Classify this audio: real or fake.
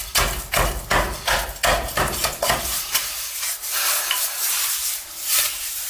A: real